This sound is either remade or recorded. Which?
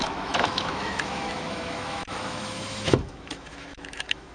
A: remade